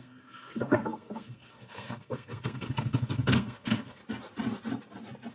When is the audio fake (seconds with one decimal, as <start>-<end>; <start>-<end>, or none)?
0.0-4.0